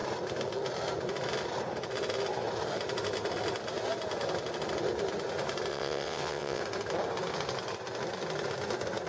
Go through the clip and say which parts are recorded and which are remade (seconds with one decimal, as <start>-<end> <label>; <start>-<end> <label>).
0.0-5.7 recorded; 5.7-6.6 remade; 6.6-9.1 recorded